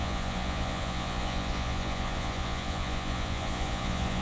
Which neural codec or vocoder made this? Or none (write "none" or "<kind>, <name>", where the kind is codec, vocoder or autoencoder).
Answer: vocoder, Vocos